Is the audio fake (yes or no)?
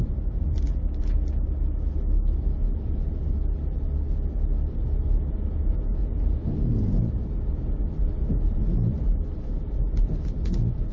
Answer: no